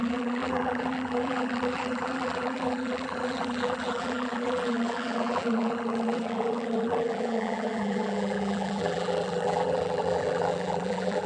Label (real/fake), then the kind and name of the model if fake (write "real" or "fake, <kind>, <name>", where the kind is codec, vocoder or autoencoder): fake, vocoder, BigVGAN v2